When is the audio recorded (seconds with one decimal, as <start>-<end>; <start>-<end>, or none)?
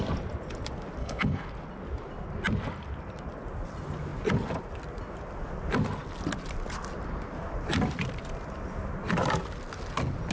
0.0-1.0; 1.5-10.3